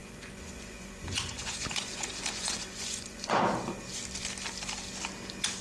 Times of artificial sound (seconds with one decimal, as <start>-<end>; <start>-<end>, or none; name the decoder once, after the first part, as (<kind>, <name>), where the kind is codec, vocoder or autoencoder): 0.0-3.4 (vocoder, Vocos)